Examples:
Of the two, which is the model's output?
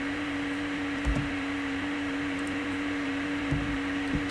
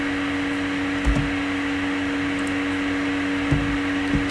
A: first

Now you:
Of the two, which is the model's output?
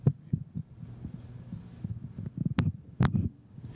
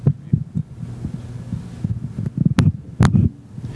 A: first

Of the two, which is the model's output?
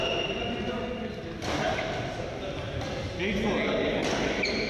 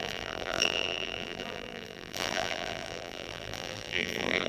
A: second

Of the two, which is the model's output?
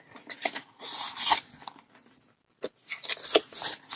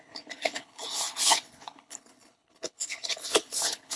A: second